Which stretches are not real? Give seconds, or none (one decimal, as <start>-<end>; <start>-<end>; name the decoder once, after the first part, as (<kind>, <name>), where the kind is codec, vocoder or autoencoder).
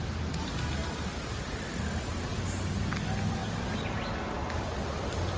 none